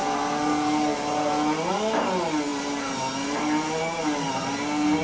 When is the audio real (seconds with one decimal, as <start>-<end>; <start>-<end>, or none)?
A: 0.0-5.0